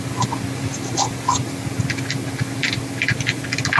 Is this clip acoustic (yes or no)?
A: yes